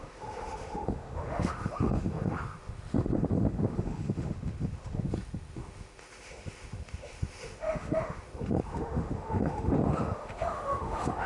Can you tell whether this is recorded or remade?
remade